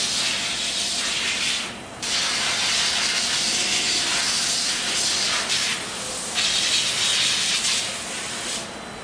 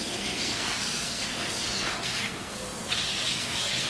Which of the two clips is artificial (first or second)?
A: second